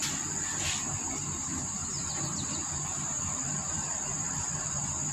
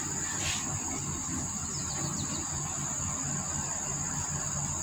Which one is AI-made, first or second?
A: first